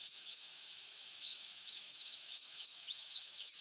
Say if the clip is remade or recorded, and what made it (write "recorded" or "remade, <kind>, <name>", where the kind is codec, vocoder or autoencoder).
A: remade, autoencoder, DAC-VAE